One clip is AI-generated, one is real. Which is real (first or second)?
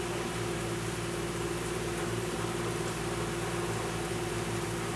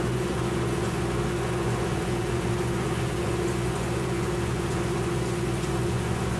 first